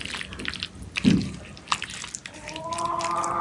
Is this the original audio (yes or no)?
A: yes